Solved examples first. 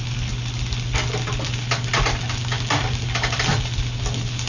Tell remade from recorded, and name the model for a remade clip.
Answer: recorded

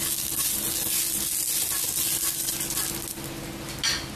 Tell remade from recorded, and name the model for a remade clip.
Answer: recorded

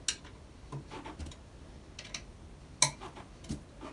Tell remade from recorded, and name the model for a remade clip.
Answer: recorded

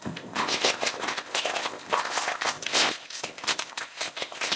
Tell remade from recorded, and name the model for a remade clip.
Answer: remade, codec, ZipCodec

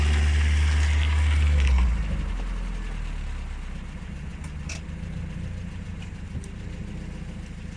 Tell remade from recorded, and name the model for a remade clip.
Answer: recorded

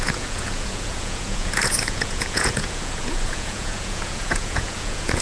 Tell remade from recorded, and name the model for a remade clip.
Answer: remade, vocoder, Vocos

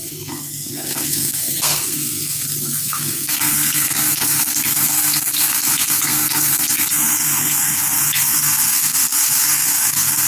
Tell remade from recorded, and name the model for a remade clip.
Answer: remade, codec, SNAC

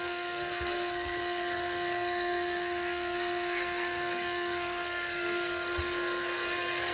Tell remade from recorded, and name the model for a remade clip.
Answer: remade, codec, SNAC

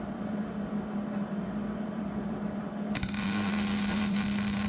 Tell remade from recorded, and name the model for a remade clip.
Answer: remade, vocoder, BigVGAN v2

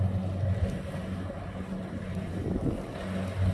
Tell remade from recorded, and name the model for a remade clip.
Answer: recorded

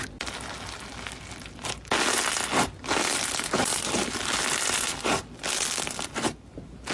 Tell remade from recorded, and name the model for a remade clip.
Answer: recorded